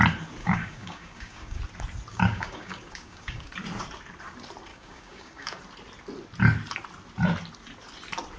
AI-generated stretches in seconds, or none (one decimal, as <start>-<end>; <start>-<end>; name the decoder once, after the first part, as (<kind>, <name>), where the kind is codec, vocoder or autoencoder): 0.4-1.6 (codec, DAC); 2.1-3.5; 4.7-5.6

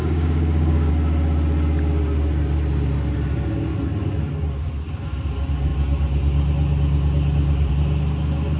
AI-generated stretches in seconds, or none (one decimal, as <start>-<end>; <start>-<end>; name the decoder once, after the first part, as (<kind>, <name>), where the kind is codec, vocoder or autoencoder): 0.0-0.9 (codec, DAC)

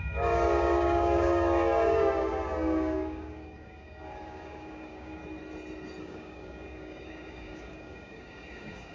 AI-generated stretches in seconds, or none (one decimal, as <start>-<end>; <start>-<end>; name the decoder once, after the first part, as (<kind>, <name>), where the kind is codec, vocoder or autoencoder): 0.0-5.2 (codec, DAC); 6.0-8.9

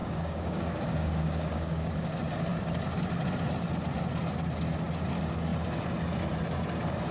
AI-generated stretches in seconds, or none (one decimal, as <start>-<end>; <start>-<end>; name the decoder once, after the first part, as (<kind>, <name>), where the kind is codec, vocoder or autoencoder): 0.0-1.9 (codec, DAC)

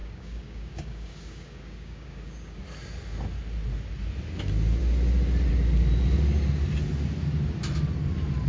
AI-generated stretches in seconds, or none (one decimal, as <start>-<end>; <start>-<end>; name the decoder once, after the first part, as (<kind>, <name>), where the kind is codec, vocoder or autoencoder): 0.0-2.6 (codec, DAC)